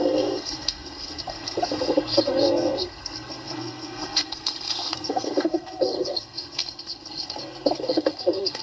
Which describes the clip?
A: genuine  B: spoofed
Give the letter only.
B